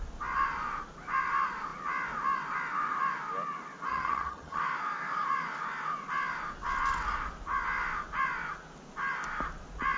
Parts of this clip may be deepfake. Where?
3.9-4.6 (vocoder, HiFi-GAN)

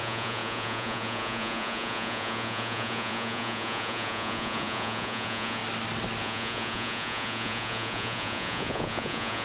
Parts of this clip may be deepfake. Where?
0.0-5.6 (vocoder, Vocos); 6.2-9.4

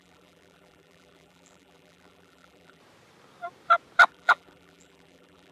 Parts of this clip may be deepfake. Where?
0.0-2.8 (vocoder, BigVGAN v2); 4.1-5.5

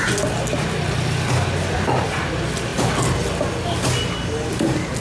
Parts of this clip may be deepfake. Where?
none